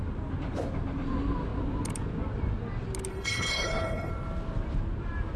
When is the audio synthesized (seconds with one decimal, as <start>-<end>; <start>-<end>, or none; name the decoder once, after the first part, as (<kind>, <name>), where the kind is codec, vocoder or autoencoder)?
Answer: 3.1-4.1 (codec, HILCodec)